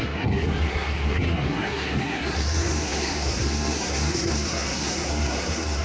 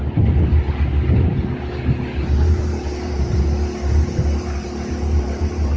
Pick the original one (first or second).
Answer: second